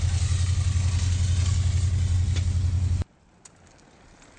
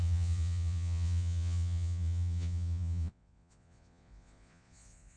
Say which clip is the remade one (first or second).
second